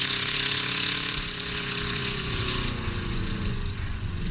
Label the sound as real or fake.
fake